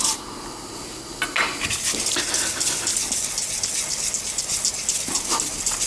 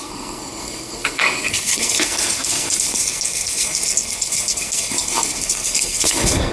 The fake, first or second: second